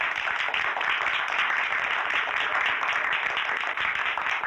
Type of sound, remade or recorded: recorded